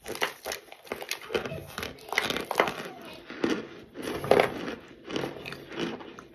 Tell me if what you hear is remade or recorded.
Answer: recorded